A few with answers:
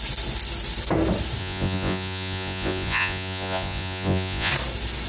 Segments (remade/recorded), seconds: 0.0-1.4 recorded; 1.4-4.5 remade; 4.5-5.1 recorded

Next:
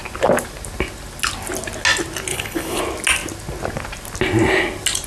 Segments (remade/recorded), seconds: 0.0-2.3 recorded; 2.3-2.8 remade; 2.8-5.1 recorded